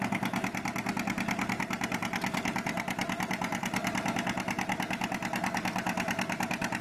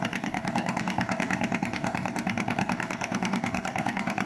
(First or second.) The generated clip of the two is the second